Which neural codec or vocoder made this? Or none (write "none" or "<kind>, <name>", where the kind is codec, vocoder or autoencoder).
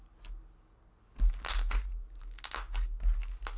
none